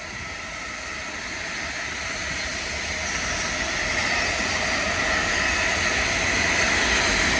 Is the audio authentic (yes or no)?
yes